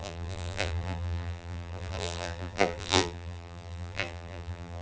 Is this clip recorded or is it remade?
remade